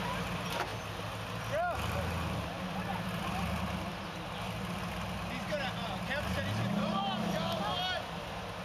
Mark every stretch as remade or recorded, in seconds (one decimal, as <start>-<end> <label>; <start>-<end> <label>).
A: 0.0-8.6 recorded